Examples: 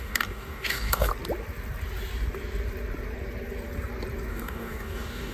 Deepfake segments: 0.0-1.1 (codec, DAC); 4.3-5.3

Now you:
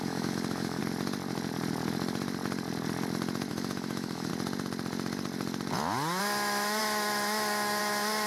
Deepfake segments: 0.0-0.8 (autoencoder, DAC-VAE); 3.5-4.3; 6.2-8.3